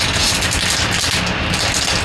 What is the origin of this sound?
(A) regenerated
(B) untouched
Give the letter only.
B